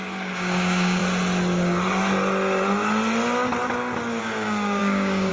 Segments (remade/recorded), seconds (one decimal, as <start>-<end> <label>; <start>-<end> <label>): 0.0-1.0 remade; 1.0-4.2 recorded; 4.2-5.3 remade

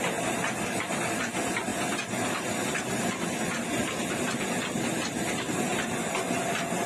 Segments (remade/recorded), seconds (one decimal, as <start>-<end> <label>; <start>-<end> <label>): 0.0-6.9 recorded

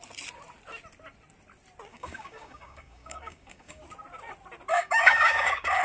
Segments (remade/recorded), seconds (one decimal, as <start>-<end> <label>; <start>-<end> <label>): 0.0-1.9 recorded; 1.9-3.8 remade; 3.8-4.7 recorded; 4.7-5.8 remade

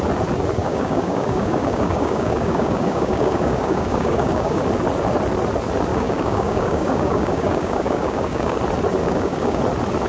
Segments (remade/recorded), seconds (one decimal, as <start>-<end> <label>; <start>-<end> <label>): 0.0-0.6 recorded; 0.6-4.6 remade; 4.6-5.9 recorded; 5.9-8.6 remade; 8.6-9.0 recorded; 9.0-9.6 remade; 9.6-10.1 recorded